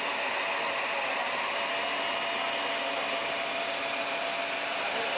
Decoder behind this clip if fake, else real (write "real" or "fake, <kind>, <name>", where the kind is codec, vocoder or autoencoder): real